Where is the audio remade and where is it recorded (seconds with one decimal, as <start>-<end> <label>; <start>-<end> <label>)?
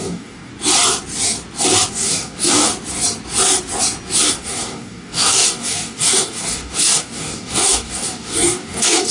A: 0.0-0.5 remade; 0.5-1.9 recorded; 1.9-2.7 remade; 2.7-4.3 recorded; 4.3-9.1 remade